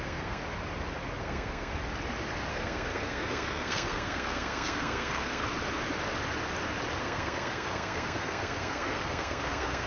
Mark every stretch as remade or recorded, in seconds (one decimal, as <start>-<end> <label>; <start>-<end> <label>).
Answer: 0.0-0.4 remade; 0.4-1.2 recorded; 1.2-1.7 remade; 1.7-2.5 recorded; 2.5-5.4 remade; 5.4-7.0 recorded; 7.0-9.9 remade

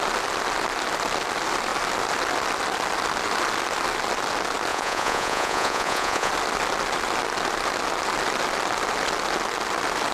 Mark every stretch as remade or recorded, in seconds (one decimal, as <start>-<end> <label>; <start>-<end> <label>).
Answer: 0.0-4.7 recorded; 4.7-6.3 remade; 6.3-10.1 recorded

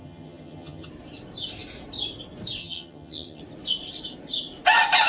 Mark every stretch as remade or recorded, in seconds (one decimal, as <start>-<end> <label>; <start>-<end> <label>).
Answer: 0.0-0.9 remade; 0.9-2.6 recorded; 2.6-3.4 remade; 3.4-5.1 recorded

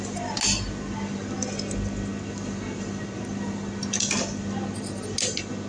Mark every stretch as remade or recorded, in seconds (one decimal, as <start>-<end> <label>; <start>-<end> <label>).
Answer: 0.0-5.7 recorded

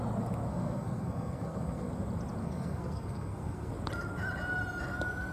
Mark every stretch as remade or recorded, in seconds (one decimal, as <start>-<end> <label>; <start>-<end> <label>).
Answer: 0.0-0.5 recorded; 0.5-1.9 remade; 1.9-2.4 recorded; 2.4-3.7 remade; 3.7-5.3 recorded

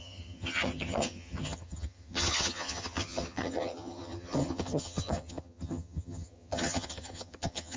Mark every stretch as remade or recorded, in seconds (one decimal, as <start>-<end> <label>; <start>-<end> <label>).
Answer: 0.0-7.8 remade

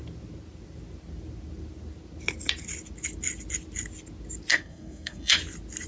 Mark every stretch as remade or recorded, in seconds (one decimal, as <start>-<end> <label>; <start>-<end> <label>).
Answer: 0.0-4.5 recorded; 4.5-5.4 remade; 5.4-5.9 recorded